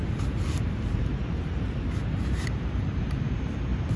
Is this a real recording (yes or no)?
no